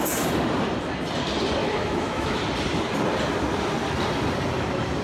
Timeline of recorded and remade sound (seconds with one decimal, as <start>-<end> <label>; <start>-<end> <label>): 0.0-1.6 recorded; 1.6-2.4 remade; 2.4-5.0 recorded